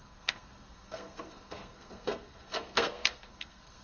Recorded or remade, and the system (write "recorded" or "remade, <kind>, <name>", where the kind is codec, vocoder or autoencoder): remade, codec, SNAC